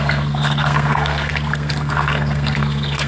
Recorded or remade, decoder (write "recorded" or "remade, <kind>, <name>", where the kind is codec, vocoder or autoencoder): remade, codec, SNAC